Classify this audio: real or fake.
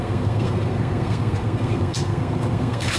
fake